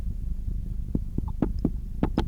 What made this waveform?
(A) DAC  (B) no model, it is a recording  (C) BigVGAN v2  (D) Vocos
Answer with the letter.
C